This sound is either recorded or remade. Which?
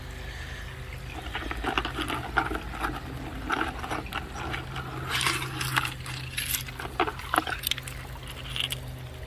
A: recorded